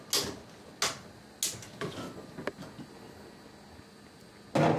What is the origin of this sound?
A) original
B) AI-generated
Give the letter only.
A